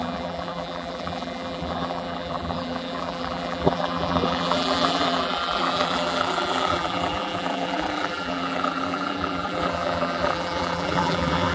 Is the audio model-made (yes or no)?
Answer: yes